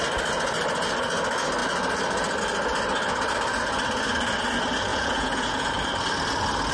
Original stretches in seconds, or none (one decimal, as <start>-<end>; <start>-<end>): 0.0-4.9; 5.7-6.7